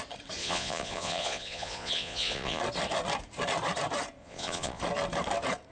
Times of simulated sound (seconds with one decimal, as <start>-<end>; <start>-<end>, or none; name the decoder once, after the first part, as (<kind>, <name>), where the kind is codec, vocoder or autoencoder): 0.4-2.6 (vocoder, Vocos); 4.2-4.8